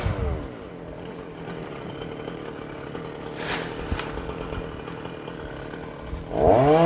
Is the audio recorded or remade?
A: recorded